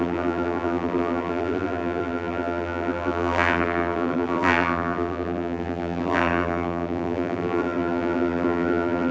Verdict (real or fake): fake